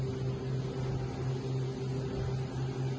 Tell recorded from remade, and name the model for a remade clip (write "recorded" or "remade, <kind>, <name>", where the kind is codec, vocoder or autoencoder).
recorded